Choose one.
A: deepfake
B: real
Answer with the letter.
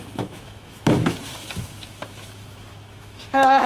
A